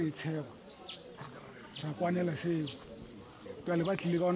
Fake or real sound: real